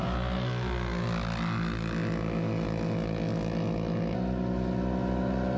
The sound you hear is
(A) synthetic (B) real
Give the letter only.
B